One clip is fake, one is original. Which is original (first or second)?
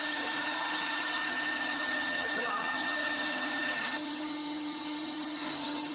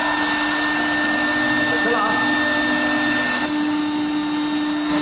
second